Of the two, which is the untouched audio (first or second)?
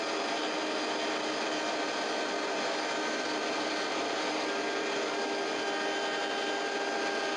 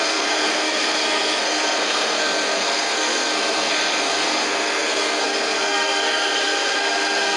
first